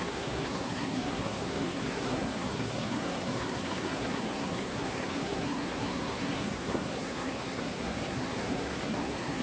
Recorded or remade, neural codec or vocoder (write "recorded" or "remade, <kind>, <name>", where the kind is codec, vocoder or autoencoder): remade, codec, SNAC